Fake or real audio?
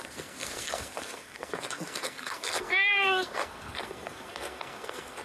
fake